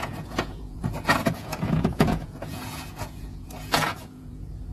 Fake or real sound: fake